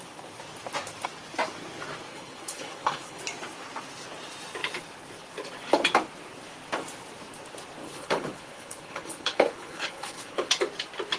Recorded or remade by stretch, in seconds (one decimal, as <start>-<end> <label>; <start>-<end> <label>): 0.0-2.1 recorded; 2.1-3.2 remade; 3.2-7.8 recorded; 7.8-10.5 remade; 10.5-11.2 recorded